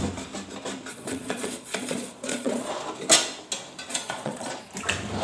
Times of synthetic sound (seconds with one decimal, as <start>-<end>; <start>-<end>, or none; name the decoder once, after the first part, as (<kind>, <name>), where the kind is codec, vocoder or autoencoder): 0.9-2.7 (vocoder, Vocos); 3.9-4.5